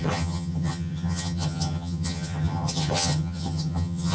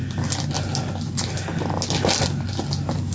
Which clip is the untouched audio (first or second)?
second